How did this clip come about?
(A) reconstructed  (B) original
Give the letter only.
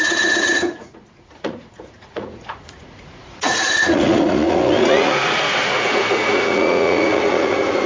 A